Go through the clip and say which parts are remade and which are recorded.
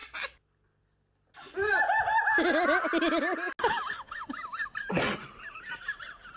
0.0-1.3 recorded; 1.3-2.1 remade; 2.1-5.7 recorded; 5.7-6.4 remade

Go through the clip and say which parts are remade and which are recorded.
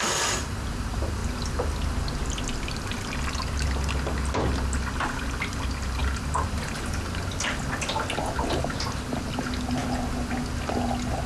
0.0-11.3 recorded